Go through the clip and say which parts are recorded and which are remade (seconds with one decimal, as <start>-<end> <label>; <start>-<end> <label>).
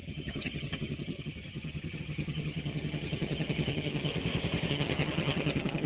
0.0-4.1 remade; 4.1-4.7 recorded; 4.7-5.9 remade